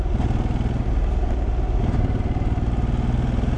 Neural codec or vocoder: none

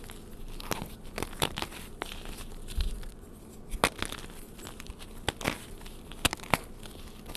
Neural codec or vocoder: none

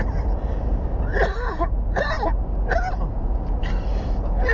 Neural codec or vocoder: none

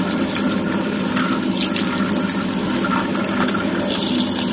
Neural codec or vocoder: none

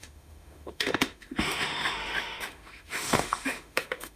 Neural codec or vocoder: autoencoder, DAC-VAE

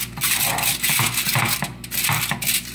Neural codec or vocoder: none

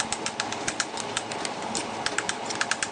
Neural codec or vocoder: none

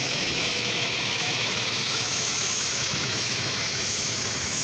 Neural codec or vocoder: autoencoder, DAC-VAE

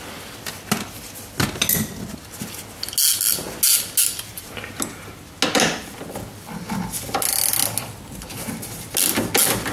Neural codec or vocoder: none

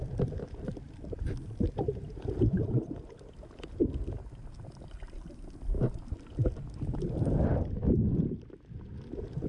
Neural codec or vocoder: none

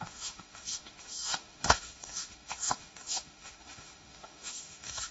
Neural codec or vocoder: autoencoder, DAC-VAE